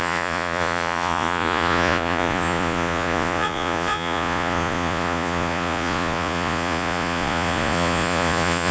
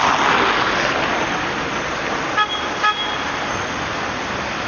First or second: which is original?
second